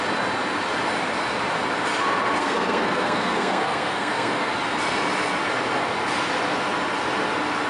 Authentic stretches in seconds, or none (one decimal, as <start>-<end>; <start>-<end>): 0.0-2.4; 4.5-7.7